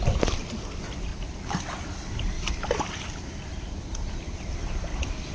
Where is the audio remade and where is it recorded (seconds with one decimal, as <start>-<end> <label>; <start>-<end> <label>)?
0.0-1.1 recorded; 1.1-4.3 remade; 4.3-5.3 recorded